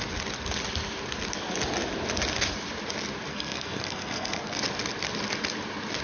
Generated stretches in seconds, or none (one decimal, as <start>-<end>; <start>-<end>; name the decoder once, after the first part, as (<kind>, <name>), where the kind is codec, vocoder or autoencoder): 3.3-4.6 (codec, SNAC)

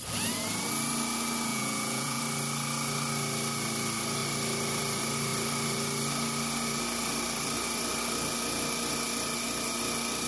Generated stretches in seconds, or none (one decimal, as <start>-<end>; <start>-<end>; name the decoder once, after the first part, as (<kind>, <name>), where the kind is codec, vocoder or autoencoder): 1.5-2.2 (vocoder, Vocos)

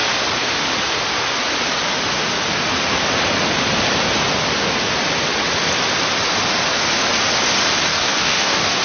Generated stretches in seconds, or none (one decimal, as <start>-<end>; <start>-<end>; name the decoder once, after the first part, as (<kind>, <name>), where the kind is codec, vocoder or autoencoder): 7.9-8.8 (codec, DAC)

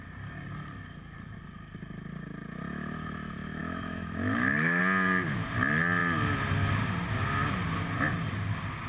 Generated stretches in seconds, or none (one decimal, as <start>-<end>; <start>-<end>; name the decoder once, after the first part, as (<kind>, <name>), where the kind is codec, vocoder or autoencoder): 3.6-4.8 (autoencoder, DAC-VAE)